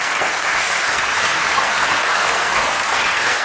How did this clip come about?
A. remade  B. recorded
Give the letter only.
A